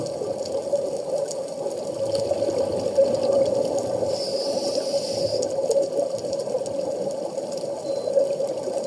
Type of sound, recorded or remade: recorded